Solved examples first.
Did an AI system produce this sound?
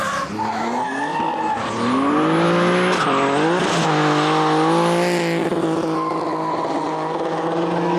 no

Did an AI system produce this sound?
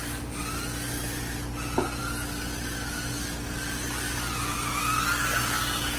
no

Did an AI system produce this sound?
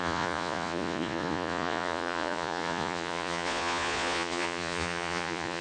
yes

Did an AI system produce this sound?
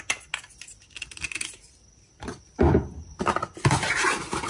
no